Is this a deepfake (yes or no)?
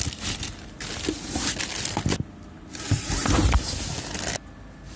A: no